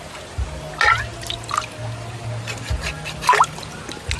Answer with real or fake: real